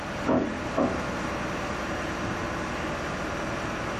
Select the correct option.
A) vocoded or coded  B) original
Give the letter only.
B